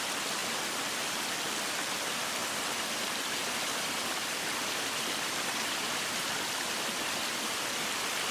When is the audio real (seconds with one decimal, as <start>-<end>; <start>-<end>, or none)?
0.0-2.4; 2.9-3.4; 7.9-8.3